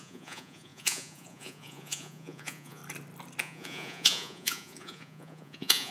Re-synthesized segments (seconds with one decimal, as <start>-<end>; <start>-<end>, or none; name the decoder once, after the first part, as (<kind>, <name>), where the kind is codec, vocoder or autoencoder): 0.0-2.8 (vocoder, Vocos); 3.4-5.9